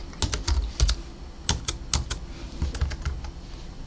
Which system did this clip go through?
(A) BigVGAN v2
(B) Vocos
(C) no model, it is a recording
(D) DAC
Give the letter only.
C